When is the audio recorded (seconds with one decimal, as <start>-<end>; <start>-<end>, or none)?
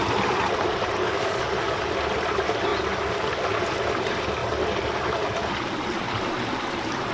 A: 0.0-1.0; 1.8-7.1